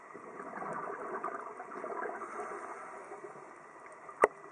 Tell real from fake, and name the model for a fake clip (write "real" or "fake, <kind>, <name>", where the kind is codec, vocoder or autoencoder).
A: real